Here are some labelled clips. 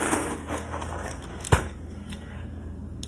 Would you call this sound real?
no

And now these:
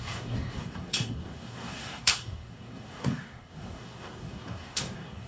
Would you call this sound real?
no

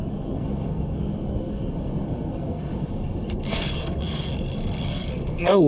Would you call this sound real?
no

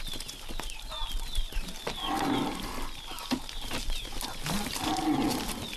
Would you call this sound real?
yes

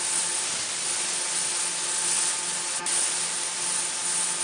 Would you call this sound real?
yes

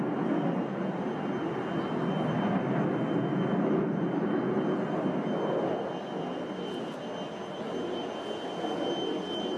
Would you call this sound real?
yes